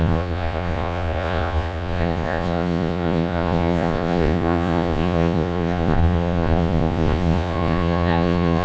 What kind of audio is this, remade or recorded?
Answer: remade